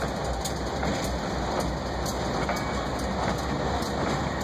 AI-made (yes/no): no